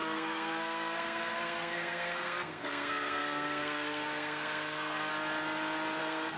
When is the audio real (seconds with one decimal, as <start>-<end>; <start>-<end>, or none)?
5.1-6.0